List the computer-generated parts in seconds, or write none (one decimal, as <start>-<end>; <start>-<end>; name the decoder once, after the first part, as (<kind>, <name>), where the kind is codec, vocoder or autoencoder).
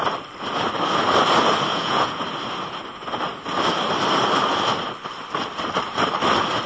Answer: 1.7-2.2 (vocoder, Vocos)